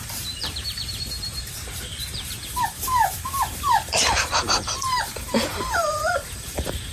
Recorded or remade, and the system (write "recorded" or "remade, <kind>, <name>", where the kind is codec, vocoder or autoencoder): remade, vocoder, BigVGAN v2